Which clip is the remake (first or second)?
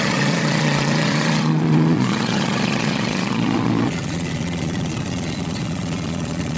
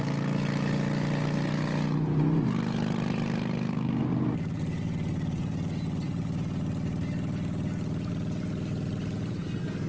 first